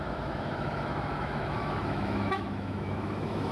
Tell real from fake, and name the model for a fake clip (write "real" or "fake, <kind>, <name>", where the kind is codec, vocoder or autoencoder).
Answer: fake, autoencoder, DAC-VAE